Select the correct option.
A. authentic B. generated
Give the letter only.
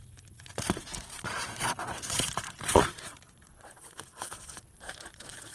B